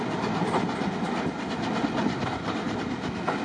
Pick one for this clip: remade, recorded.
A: recorded